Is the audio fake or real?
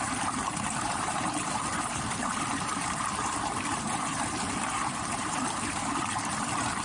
fake